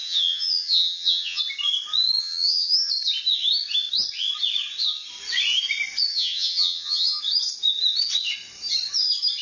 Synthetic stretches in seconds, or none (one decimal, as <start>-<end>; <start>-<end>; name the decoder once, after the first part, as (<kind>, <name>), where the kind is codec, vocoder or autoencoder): 0.0-1.4 (vocoder, HiFi-GAN); 2.2-2.9; 6.1-7.2